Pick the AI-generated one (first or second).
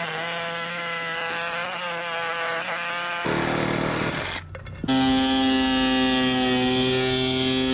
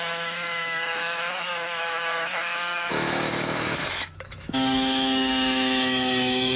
second